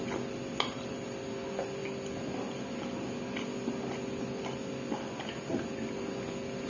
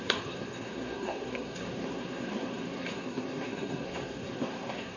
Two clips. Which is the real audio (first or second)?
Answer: first